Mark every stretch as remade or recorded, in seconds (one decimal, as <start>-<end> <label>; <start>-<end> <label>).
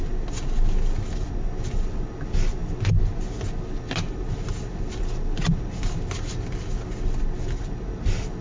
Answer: 0.0-8.4 recorded